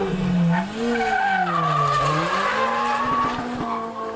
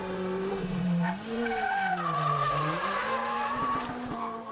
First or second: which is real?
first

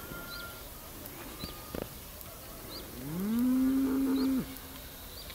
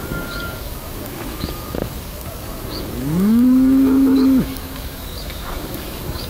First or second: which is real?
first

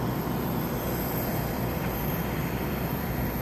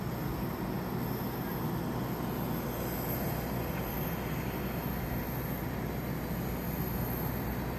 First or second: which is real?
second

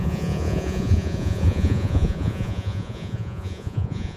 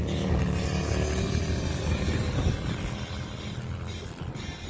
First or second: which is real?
second